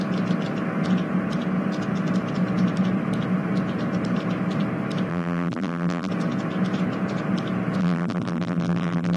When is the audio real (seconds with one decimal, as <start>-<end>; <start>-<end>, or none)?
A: 0.0-5.1; 6.1-7.8